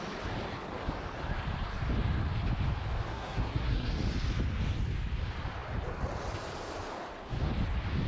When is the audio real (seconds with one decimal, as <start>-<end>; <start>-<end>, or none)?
0.0-3.1; 4.0-8.1